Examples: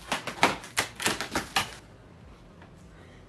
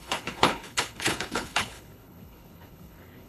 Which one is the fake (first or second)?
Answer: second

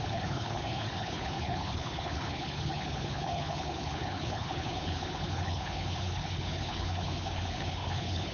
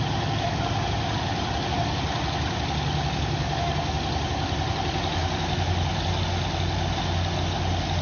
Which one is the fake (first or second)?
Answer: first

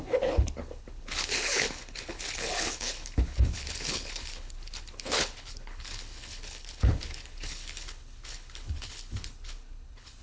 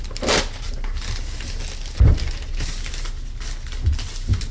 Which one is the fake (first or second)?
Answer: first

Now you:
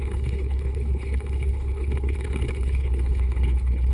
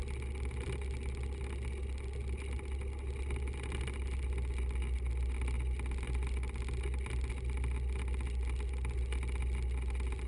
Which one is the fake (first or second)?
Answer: first